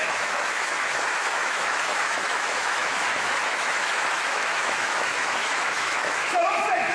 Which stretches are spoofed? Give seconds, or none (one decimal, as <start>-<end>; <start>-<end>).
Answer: 0.0-6.9